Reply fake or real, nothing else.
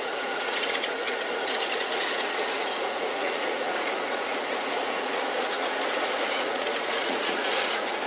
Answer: fake